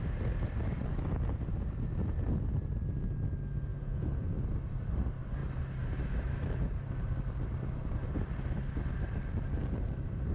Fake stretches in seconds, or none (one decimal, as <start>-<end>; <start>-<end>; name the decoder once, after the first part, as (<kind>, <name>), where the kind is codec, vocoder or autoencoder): 3.7-4.3 (vocoder, Vocos)